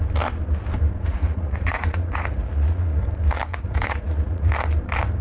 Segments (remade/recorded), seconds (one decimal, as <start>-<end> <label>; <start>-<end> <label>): 0.0-1.0 recorded; 1.0-3.0 remade; 3.0-3.5 recorded; 3.5-4.5 remade; 4.5-5.2 recorded